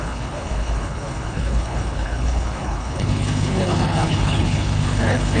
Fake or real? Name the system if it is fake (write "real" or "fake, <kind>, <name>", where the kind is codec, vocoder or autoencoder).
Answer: fake, codec, HILCodec